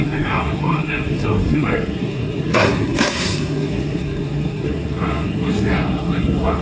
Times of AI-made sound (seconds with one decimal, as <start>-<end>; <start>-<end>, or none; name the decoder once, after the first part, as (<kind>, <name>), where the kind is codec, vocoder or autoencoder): 0.0-6.6 (codec, SNAC)